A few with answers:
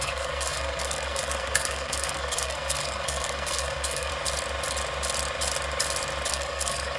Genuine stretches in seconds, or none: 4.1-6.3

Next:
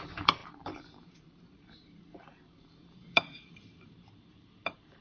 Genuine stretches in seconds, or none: none

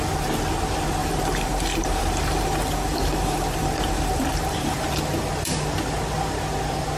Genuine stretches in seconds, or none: 0.0-1.0; 5.2-7.0

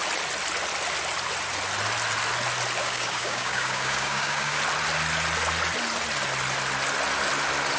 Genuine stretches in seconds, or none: 0.0-2.8; 4.6-7.8

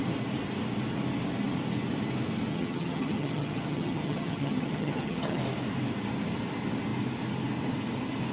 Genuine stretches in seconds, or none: 0.0-2.5; 5.4-8.3

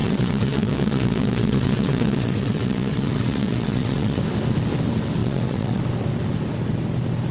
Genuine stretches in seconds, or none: 4.2-5.2; 5.8-7.3